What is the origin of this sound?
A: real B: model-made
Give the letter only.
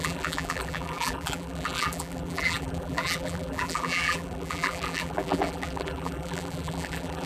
B